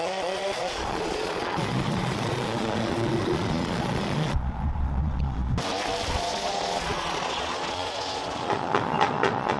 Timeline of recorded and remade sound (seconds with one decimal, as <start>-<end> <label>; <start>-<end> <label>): 0.0-5.5 remade; 5.5-6.1 recorded; 6.1-9.6 remade